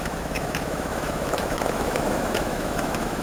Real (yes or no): no